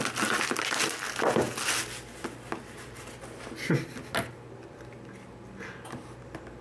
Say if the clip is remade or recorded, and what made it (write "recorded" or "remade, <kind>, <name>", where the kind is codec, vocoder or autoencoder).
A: recorded